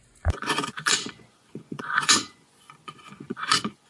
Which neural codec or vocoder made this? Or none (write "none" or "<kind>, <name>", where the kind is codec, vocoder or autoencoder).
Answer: vocoder, Vocos